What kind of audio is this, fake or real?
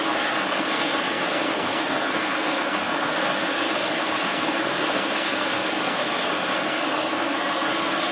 fake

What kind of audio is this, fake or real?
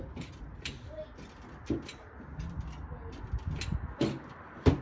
real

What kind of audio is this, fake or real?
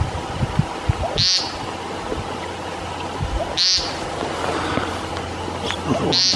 real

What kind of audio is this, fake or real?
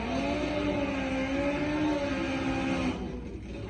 real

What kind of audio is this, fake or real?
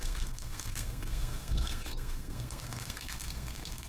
fake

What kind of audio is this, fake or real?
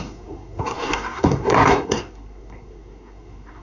fake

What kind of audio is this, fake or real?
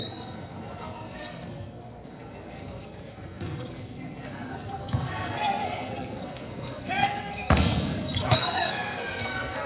fake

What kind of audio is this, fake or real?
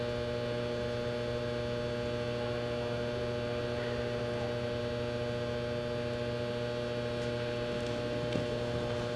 real